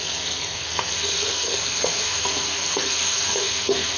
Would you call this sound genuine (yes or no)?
no